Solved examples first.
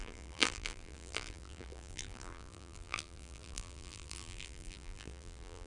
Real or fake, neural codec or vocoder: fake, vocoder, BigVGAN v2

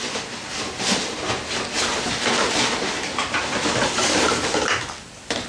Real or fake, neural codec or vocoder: real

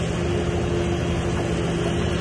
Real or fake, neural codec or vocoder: real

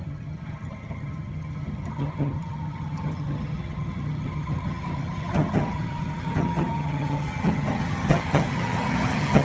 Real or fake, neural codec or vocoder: fake, vocoder, HiFi-GAN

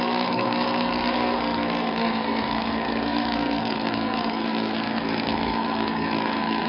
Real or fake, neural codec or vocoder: fake, codec, SNAC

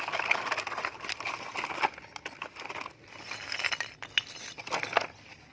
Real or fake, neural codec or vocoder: real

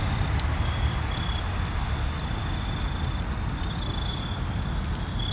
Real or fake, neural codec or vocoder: real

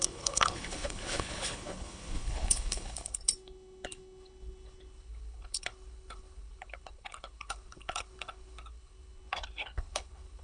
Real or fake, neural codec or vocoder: fake, codec, HILCodec